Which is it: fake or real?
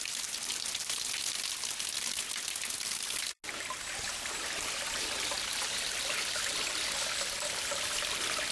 real